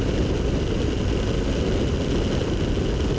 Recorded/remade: recorded